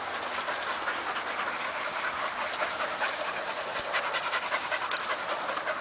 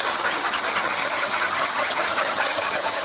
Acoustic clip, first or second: first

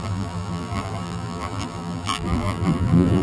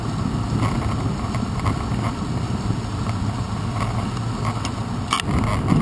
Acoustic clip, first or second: second